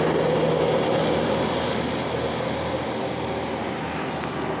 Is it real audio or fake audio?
real